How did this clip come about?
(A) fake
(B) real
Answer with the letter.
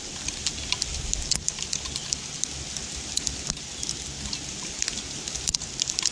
B